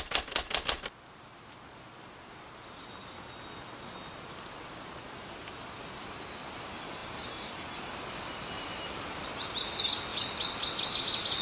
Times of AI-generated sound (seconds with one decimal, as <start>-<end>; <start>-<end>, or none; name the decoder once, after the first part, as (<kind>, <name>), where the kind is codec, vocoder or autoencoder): none